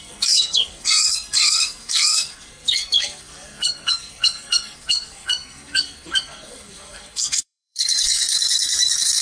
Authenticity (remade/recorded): remade